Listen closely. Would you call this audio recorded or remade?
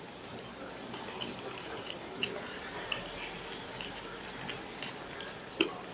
recorded